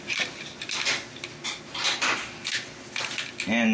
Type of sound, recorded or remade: recorded